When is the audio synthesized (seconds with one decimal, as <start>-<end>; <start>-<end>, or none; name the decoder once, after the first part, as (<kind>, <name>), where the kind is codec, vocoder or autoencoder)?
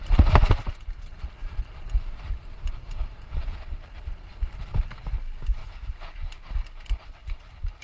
1.1-4.3 (vocoder, BigVGAN v2); 5.6-6.3; 7.2-7.8